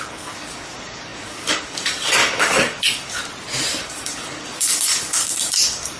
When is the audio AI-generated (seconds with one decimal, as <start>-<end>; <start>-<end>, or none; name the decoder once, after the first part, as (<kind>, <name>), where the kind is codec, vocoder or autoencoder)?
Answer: 0.0-3.2 (codec, DAC); 3.8-6.0